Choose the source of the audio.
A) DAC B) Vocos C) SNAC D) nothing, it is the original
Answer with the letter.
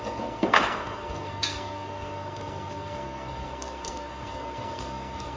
C